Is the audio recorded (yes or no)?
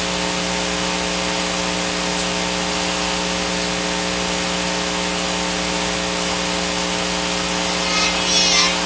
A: yes